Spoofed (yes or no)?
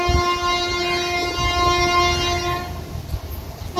no